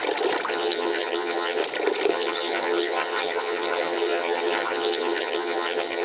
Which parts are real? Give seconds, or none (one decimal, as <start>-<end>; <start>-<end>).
0.0-0.5; 1.6-2.1